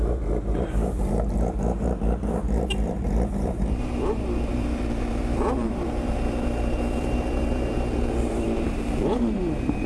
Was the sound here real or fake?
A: fake